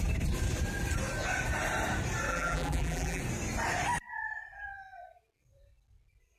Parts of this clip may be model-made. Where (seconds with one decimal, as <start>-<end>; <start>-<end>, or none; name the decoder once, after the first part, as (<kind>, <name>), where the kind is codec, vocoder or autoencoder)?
2.3-3.2 (vocoder, BigVGAN v2)